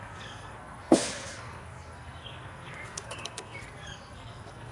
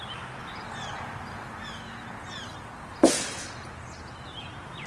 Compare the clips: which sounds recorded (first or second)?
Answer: second